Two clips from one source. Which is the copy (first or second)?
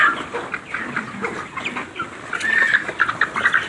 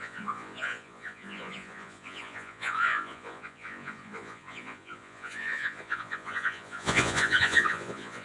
second